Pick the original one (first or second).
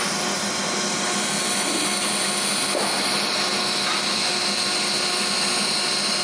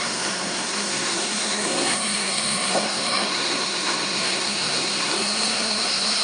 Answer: first